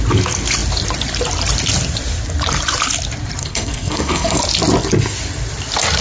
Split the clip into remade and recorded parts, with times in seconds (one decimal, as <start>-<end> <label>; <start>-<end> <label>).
0.0-3.4 recorded; 3.4-4.4 remade; 4.4-6.0 recorded